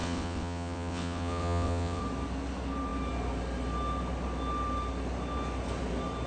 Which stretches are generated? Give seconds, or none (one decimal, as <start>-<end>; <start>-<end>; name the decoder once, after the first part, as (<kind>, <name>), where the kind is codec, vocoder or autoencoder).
0.0-2.0 (vocoder, WaveNeXt)